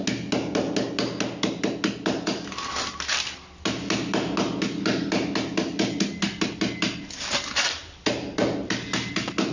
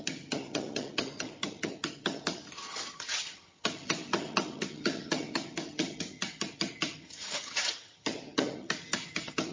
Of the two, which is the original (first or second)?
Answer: first